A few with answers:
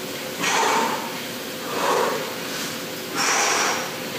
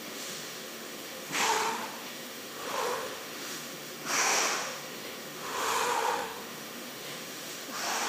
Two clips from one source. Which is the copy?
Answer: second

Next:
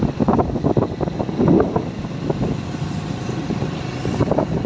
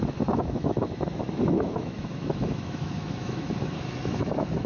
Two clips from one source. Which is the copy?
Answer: second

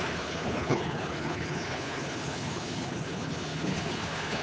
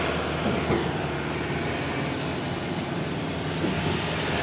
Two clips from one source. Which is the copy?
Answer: first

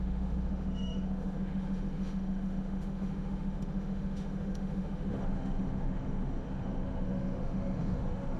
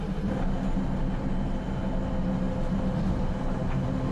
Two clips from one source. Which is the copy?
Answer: first